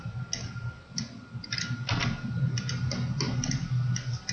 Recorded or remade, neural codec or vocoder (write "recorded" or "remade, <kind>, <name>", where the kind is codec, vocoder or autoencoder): recorded